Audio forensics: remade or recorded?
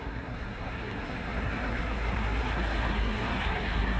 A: remade